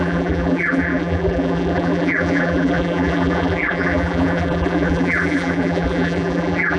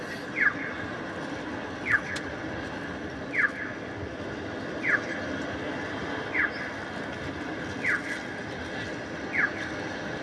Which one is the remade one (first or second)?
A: first